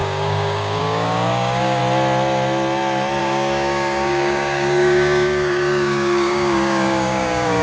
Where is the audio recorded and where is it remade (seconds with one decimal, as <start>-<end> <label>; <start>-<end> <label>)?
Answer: 0.0-1.8 remade; 1.8-3.2 recorded; 3.2-7.6 remade